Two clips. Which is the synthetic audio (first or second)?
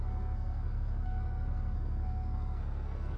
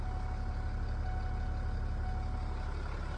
first